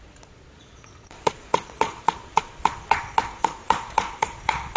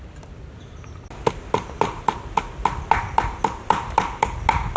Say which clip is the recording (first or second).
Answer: second